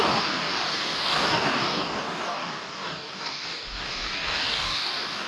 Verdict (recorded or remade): remade